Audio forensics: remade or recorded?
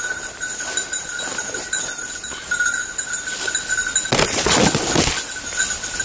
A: recorded